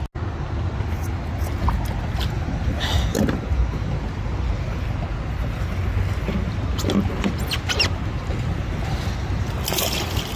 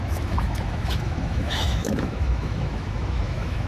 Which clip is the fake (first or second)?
second